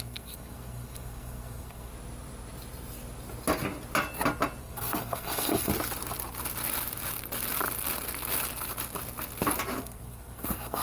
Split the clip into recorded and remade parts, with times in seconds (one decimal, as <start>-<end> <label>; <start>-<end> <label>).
0.0-1.9 remade; 1.9-4.6 recorded; 4.6-5.7 remade; 5.7-9.8 recorded; 9.8-10.8 remade